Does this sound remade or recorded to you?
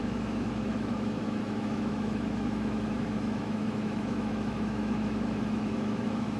remade